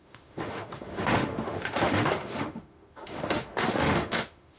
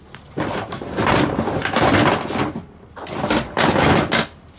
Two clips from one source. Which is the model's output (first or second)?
first